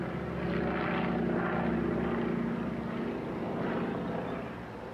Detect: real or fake real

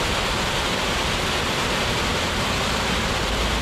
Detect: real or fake real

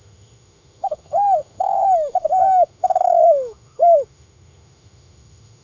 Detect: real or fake fake